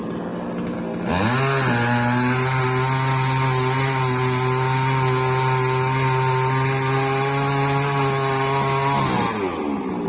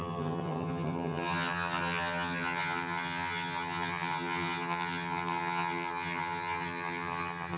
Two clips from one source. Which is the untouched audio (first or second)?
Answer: first